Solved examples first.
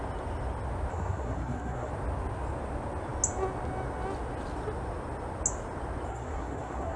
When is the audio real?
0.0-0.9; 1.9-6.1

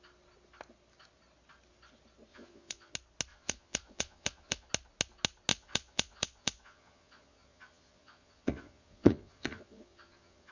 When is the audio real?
0.0-2.3; 2.9-3.3; 4.7-5.5

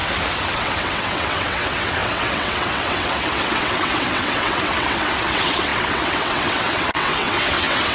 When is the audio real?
0.0-0.5

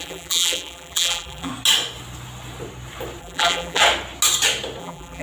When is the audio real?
1.5-3.2; 3.8-4.8